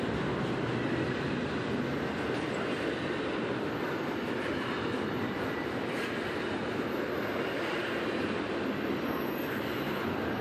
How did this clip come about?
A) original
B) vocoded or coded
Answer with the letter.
A